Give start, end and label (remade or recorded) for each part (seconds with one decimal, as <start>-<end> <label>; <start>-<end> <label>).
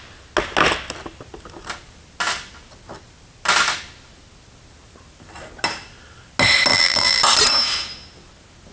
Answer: 0.0-6.7 recorded; 6.7-7.2 remade; 7.2-8.7 recorded